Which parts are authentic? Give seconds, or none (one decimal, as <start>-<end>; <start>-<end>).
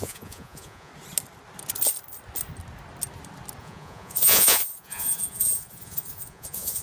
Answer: 0.9-3.6